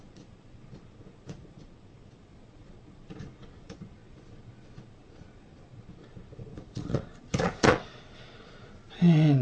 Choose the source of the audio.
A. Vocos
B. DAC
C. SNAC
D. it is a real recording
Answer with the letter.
A